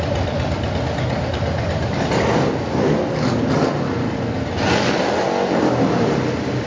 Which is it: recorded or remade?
recorded